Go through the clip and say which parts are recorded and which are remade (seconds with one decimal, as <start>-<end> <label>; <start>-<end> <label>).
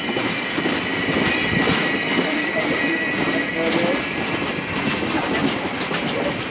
0.0-6.5 recorded